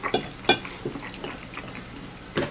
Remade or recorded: recorded